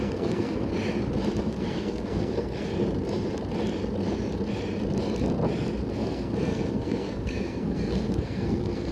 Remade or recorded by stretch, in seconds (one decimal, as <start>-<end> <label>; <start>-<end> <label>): 0.0-0.7 remade; 0.7-1.4 recorded; 1.4-2.7 remade; 2.7-5.9 recorded; 5.9-8.9 remade